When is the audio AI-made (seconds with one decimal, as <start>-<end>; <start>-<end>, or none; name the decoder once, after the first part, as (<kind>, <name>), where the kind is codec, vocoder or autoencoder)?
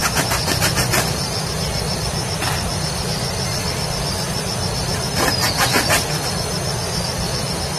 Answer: none